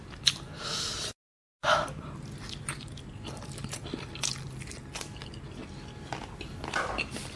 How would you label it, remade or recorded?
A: recorded